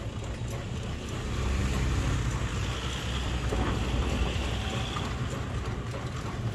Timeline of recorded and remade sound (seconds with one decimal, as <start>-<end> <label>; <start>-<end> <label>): 0.0-6.5 recorded